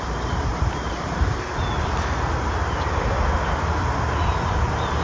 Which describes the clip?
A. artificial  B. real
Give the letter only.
B